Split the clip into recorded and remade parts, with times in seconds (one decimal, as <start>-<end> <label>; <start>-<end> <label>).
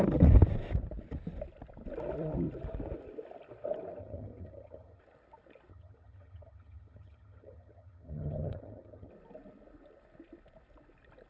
0.0-4.0 recorded; 4.0-5.0 remade; 5.0-5.7 recorded; 5.7-9.1 remade; 9.1-11.3 recorded